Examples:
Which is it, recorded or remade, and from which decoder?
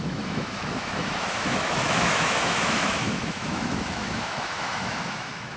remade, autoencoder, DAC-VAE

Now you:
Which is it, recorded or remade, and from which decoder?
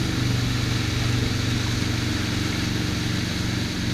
recorded